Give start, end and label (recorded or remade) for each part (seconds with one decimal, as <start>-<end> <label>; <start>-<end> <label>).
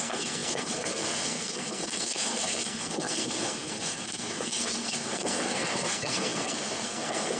0.0-7.4 remade